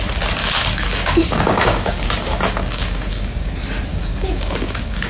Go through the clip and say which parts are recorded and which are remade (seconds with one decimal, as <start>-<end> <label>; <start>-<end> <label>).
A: 0.0-0.4 recorded; 0.4-3.5 remade; 3.5-3.9 recorded; 3.9-5.1 remade